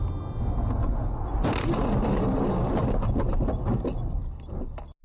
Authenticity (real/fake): real